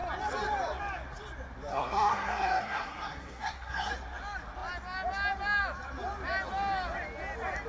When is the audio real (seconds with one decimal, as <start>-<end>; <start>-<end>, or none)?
0.0-1.7; 3.9-7.7